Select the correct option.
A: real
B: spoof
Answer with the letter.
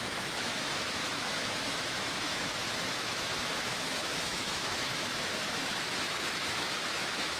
B